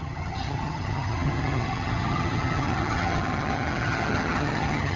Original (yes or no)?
no